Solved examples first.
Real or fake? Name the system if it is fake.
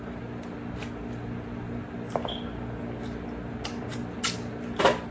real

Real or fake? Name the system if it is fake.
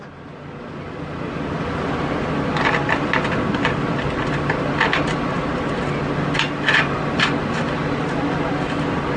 real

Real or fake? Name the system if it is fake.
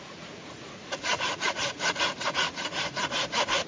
fake, vocoder, Vocos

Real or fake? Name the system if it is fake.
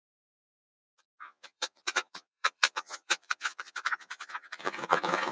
fake, vocoder, Vocos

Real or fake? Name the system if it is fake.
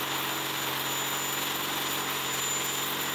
real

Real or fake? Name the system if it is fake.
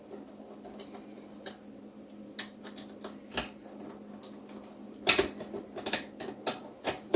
real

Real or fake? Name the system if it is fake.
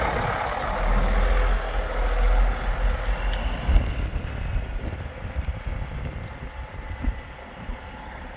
real